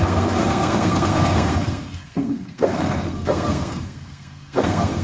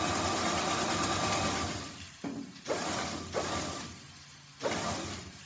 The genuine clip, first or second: second